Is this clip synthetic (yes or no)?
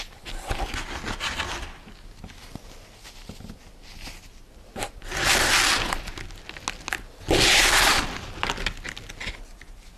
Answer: no